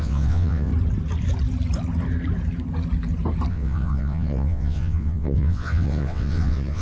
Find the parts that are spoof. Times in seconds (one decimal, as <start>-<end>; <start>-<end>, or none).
0.0-0.7; 3.5-6.8